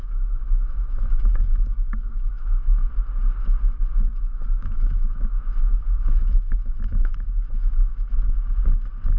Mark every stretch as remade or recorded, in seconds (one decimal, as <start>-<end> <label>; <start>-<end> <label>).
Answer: 0.0-2.9 remade; 2.9-4.1 recorded; 4.1-8.1 remade; 8.1-9.2 recorded